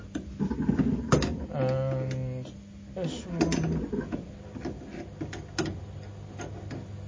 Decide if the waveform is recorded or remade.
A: recorded